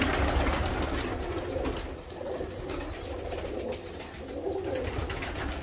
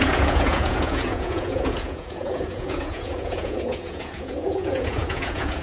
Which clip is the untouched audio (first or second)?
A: first